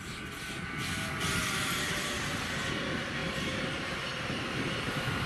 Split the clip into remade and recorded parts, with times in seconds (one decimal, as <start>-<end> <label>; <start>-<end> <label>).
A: 0.0-3.2 recorded; 3.2-3.7 remade; 3.7-5.3 recorded